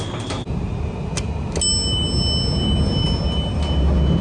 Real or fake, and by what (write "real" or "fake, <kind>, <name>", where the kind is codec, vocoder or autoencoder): real